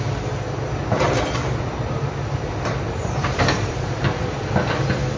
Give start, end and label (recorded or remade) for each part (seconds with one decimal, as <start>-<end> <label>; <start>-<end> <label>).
0.0-1.4 recorded; 1.4-4.5 remade; 4.5-5.2 recorded